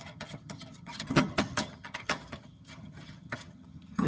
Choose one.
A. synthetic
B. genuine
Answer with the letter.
A